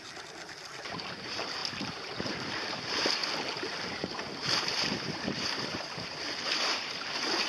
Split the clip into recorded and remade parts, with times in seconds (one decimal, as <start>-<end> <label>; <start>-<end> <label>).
0.0-3.2 remade; 3.2-3.9 recorded; 3.9-7.5 remade